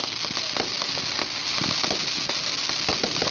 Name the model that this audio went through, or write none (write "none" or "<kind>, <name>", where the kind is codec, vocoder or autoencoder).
none